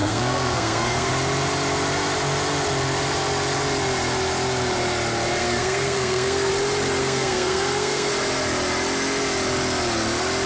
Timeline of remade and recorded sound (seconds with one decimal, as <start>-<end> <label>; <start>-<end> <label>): 0.0-1.1 remade; 1.1-5.4 recorded; 5.4-6.5 remade; 6.5-7.0 recorded; 7.0-8.1 remade; 8.1-10.5 recorded